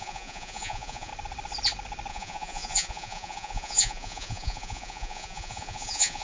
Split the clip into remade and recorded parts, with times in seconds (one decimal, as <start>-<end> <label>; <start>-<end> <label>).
0.0-1.1 remade; 1.1-2.1 recorded; 2.1-6.2 remade